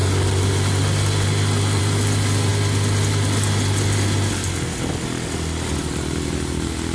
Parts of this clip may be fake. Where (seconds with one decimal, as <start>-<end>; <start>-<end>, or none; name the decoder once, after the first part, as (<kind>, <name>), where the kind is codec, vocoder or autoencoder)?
none

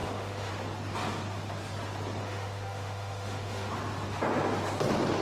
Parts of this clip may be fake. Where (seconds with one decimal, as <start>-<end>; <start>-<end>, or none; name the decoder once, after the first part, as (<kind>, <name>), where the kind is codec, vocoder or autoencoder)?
0.0-0.5 (autoencoder, DAC-VAE); 2.2-3.7

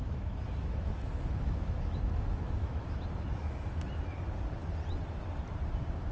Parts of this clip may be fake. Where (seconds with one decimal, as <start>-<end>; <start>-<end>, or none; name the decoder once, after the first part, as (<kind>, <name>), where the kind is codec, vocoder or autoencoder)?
0.0-3.7 (autoencoder, DAC-VAE)

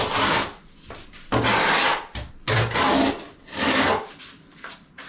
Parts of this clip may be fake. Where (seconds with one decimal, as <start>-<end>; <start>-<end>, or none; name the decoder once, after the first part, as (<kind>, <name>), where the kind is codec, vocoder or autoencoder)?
none

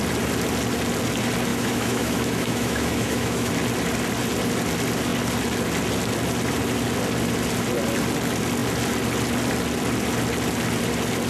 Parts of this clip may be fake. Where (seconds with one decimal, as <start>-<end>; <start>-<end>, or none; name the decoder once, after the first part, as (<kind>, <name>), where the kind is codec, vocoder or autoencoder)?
1.5-3.5 (autoencoder, DAC-VAE)

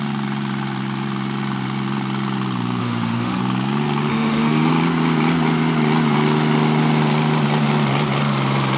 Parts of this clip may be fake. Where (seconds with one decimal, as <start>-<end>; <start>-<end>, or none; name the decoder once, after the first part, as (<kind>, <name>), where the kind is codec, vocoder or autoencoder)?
2.8-3.4 (autoencoder, DAC-VAE); 4.1-4.7

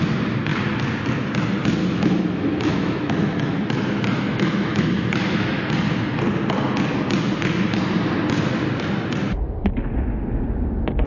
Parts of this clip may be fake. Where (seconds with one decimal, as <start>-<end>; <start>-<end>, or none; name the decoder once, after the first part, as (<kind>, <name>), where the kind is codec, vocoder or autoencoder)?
1.8-5.7 (autoencoder, DAC-VAE)